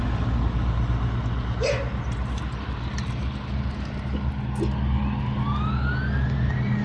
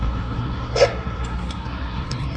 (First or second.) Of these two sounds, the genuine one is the first